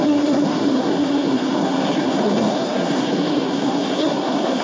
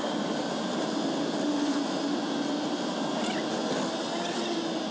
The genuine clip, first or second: second